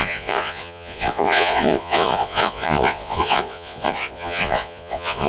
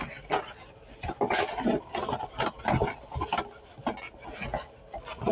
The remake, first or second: first